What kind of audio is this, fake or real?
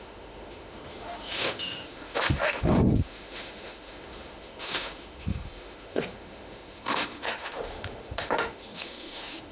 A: fake